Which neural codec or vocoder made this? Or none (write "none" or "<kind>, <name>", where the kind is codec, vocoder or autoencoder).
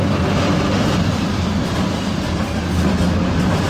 none